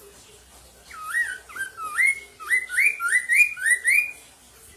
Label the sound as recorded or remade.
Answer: recorded